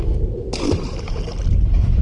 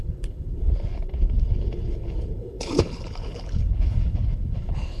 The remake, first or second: second